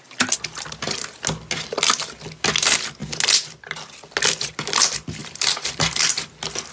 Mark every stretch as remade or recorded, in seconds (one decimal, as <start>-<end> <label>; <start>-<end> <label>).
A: 0.0-5.2 recorded; 5.2-6.1 remade; 6.1-6.7 recorded